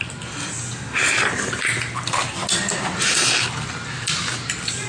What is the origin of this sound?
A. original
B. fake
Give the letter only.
A